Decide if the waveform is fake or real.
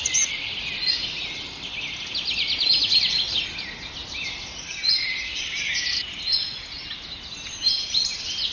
real